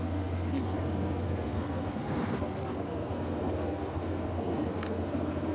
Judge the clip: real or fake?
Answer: fake